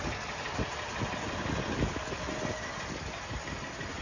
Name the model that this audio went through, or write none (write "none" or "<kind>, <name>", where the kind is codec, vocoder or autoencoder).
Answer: none